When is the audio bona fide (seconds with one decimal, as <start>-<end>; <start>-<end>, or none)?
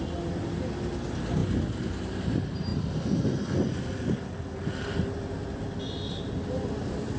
0.0-7.2